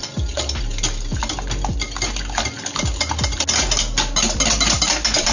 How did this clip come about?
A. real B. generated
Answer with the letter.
A